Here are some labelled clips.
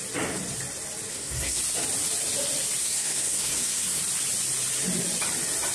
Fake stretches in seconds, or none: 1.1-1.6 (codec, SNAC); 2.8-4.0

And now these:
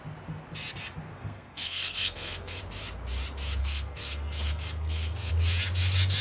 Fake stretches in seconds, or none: 1.1-2.6 (codec, SNAC); 3.6-5.3

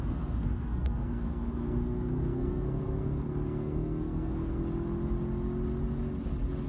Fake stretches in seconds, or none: 0.0-4.6 (codec, SNAC)

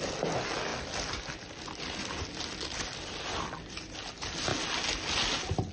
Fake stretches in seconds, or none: none